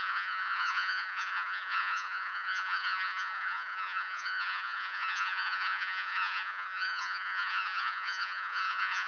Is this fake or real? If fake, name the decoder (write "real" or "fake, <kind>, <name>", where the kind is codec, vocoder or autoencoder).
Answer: fake, vocoder, Vocos